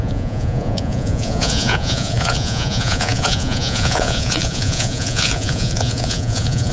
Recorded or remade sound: remade